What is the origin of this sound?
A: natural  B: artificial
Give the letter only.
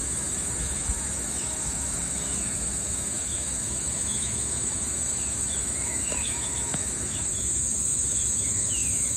B